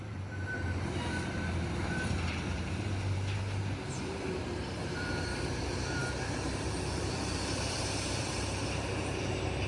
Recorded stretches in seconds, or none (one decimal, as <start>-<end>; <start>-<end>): none